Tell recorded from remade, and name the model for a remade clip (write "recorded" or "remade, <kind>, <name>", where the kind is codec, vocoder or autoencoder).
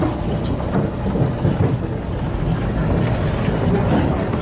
recorded